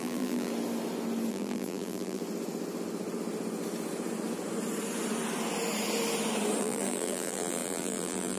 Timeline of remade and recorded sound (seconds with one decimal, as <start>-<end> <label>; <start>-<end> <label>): 0.0-0.5 remade; 0.5-1.3 recorded; 1.3-2.2 remade; 2.2-6.6 recorded; 6.6-8.4 remade